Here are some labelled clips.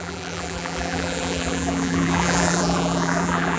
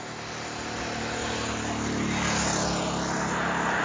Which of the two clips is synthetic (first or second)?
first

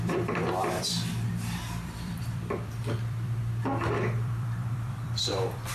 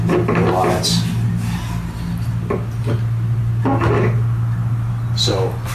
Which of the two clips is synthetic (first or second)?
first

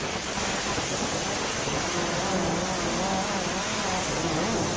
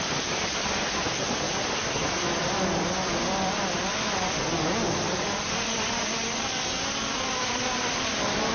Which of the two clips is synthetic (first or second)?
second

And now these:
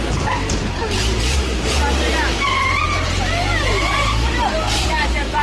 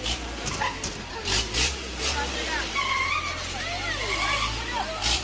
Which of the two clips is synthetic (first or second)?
first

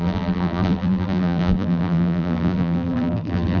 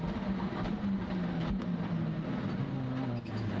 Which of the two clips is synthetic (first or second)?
first